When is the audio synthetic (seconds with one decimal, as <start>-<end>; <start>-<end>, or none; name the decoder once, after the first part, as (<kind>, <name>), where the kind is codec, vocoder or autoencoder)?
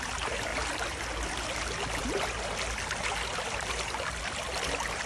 none